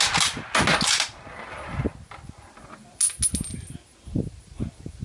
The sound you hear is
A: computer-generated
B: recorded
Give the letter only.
B